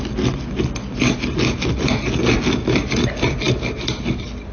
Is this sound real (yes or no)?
yes